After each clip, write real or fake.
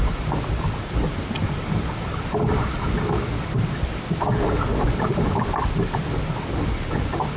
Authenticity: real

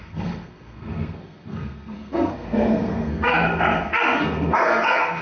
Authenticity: fake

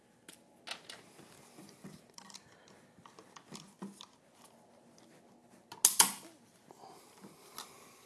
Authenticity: real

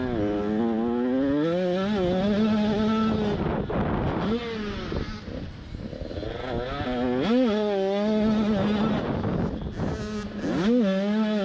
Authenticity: real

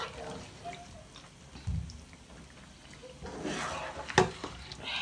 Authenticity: real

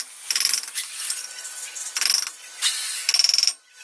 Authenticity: real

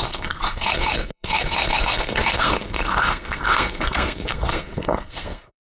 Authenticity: fake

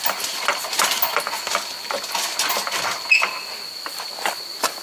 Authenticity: real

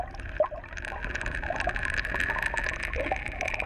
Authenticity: real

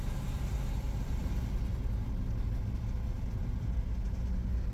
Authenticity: real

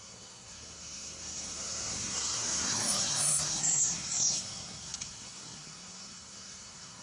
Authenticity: fake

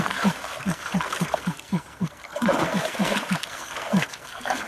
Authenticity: fake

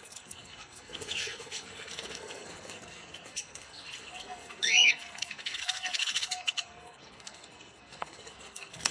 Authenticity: fake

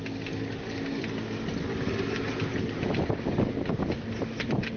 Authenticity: real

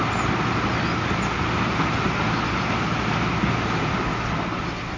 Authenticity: real